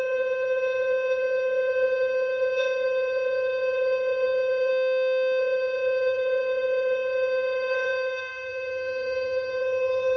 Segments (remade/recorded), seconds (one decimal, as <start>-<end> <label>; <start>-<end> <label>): 0.0-4.7 remade; 4.7-5.4 recorded; 5.4-10.2 remade